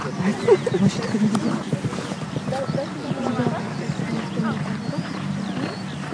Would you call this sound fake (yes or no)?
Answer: no